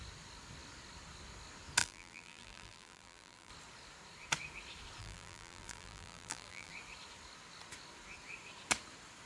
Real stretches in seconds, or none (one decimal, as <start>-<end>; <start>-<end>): 0.0-1.8; 3.5-5.0; 6.7-9.3